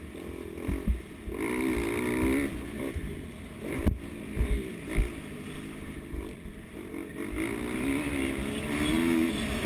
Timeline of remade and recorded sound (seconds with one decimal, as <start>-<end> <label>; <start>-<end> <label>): 0.0-9.7 recorded

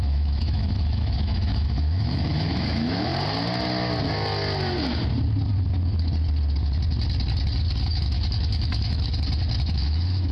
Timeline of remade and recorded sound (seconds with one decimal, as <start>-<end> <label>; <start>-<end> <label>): 0.0-3.1 remade; 3.1-7.8 recorded; 7.8-9.1 remade; 9.1-9.7 recorded; 9.7-10.3 remade

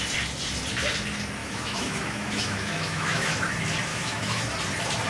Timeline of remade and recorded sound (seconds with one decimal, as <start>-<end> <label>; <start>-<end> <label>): 0.0-1.4 recorded; 1.4-3.5 remade; 3.5-3.9 recorded; 3.9-4.4 remade; 4.4-5.1 recorded